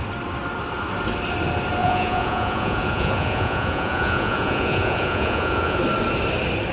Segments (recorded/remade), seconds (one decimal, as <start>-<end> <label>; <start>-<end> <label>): 0.0-1.8 recorded; 1.8-5.8 remade; 5.8-6.7 recorded